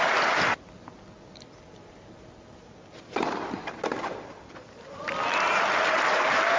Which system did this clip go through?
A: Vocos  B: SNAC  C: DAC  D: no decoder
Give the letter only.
D